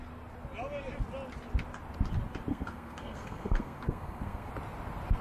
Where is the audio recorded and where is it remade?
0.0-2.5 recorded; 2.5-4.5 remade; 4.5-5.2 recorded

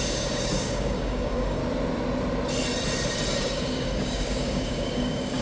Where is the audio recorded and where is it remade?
0.0-1.6 remade; 1.6-3.4 recorded; 3.4-5.4 remade

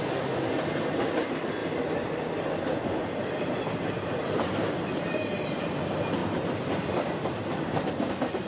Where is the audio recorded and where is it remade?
0.0-1.6 recorded; 1.6-2.1 remade; 2.1-3.2 recorded; 3.2-5.6 remade; 5.6-6.2 recorded; 6.2-8.1 remade; 8.1-8.5 recorded

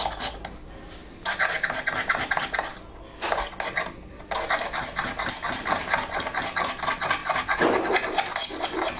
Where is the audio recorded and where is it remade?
0.0-9.0 recorded